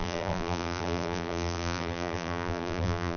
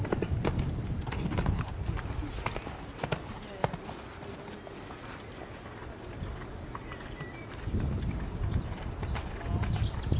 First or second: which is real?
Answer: second